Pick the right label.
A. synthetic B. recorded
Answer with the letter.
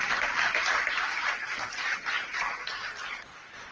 B